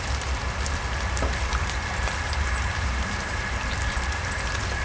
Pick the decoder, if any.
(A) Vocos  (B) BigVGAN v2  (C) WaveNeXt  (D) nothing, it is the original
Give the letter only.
B